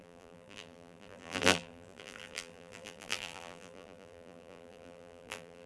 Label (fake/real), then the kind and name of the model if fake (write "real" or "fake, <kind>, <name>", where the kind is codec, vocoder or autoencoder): fake, vocoder, BigVGAN v2